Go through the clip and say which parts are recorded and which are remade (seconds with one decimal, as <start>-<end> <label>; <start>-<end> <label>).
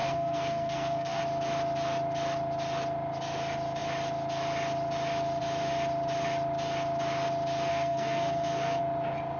0.0-1.2 remade; 1.2-7.7 recorded; 7.7-8.8 remade; 8.8-9.4 recorded